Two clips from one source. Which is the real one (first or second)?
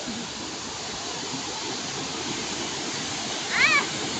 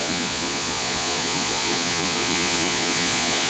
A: first